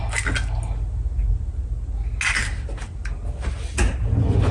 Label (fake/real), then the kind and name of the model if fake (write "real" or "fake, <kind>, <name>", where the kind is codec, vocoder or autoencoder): real